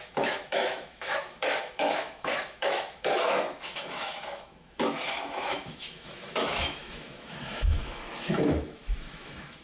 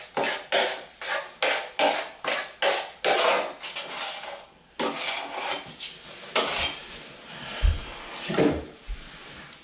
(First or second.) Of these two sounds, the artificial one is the first